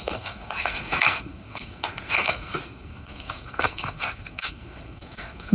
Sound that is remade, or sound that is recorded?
remade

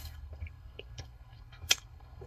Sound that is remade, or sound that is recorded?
remade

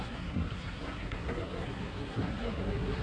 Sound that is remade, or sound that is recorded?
remade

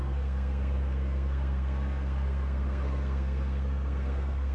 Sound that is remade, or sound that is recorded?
remade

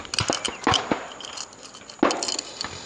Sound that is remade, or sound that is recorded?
recorded